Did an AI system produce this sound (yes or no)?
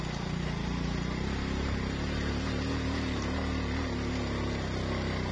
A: no